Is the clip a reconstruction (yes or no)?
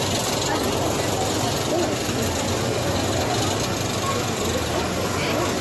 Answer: no